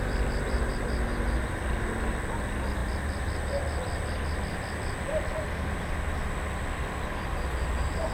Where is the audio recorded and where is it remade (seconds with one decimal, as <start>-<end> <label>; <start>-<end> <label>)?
0.0-8.1 recorded